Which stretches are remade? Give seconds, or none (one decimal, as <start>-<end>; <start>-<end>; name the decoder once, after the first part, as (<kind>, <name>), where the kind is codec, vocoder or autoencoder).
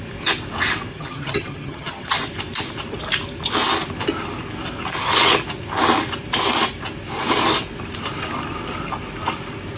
0.9-2.2 (vocoder, HiFi-GAN)